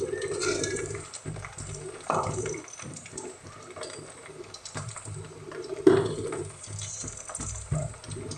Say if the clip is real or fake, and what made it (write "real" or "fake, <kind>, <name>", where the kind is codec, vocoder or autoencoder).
fake, vocoder, BigVGAN v2